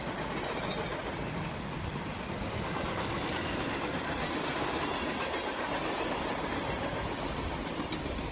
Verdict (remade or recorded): recorded